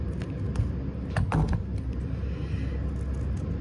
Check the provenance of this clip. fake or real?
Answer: real